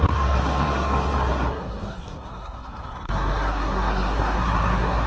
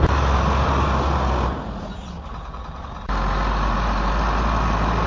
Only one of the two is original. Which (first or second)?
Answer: second